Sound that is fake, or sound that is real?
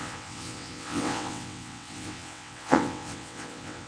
fake